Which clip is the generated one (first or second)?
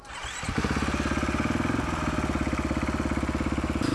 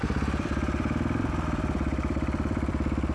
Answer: second